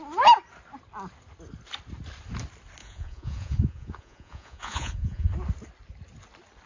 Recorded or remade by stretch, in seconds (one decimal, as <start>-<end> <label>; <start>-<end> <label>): 0.0-2.8 recorded; 2.8-5.3 remade; 5.3-6.7 recorded